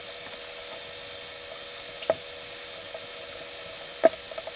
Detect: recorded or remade recorded